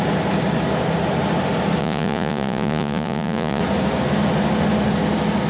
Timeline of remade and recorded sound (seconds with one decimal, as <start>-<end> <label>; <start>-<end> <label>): 0.0-1.8 recorded; 1.8-3.6 remade; 3.6-5.5 recorded